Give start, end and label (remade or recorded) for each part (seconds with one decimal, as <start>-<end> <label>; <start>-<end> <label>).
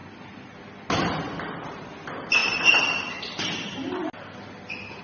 0.0-5.0 recorded